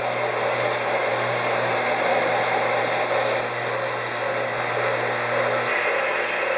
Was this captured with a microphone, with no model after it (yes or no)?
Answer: yes